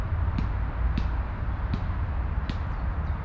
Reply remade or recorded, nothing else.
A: recorded